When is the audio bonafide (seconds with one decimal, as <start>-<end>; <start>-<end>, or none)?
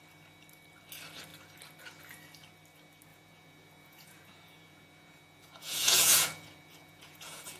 0.0-3.1